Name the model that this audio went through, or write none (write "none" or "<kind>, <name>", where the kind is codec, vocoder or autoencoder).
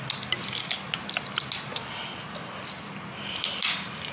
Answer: none